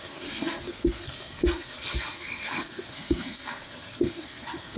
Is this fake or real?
fake